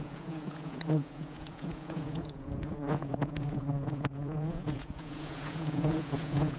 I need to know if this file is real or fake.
fake